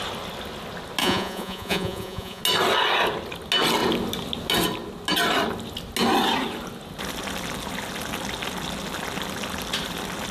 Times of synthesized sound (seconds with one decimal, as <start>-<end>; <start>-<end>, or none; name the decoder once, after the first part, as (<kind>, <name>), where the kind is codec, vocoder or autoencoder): 1.0-2.4 (vocoder, Vocos)